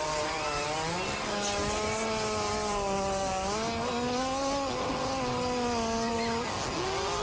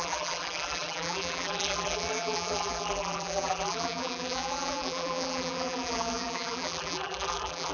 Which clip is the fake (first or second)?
second